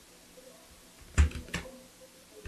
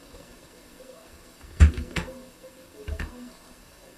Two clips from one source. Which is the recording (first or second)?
first